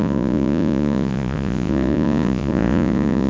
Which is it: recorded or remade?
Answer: remade